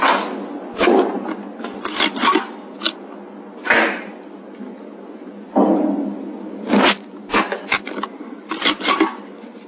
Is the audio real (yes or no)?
yes